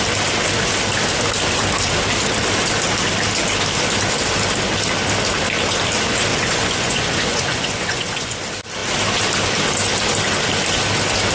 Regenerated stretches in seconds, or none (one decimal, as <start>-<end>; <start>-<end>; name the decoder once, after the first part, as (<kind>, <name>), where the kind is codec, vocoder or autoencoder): 6.3-8.4 (vocoder, Vocos)